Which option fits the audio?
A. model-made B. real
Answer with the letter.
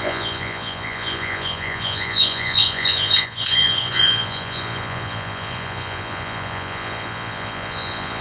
A